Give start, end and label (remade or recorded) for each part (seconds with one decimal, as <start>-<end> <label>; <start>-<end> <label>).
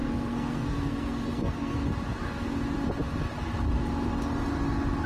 0.0-1.8 remade; 1.8-5.1 recorded